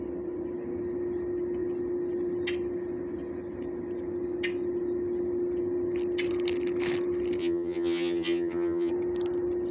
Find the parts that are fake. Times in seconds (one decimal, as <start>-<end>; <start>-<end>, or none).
7.4-8.9